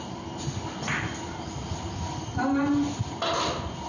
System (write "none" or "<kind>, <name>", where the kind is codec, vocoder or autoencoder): none